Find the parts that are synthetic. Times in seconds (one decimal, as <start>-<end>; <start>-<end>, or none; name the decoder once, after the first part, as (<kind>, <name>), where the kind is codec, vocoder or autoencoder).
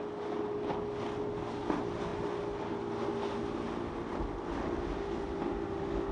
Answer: none